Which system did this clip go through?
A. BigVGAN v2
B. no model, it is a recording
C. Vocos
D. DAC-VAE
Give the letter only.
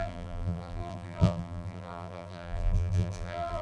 A